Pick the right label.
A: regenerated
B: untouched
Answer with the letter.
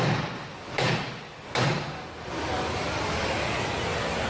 B